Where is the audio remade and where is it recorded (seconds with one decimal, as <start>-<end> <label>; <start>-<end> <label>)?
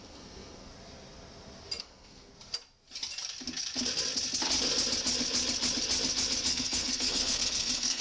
0.0-0.7 remade; 0.7-1.8 recorded; 1.8-2.3 remade; 2.3-6.5 recorded; 6.5-8.0 remade